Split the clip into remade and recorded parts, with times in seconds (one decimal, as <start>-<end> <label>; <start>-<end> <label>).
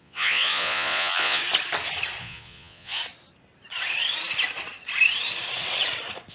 0.0-1.4 remade; 1.4-2.2 recorded; 2.2-3.0 remade; 3.0-6.3 recorded